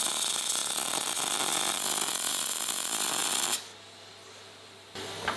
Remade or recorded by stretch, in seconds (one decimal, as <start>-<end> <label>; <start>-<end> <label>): 0.0-5.4 recorded